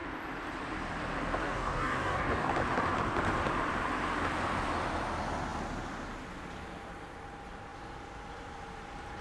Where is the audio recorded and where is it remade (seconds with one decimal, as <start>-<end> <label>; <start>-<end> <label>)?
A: 0.0-1.4 recorded; 1.4-2.5 remade; 2.5-9.2 recorded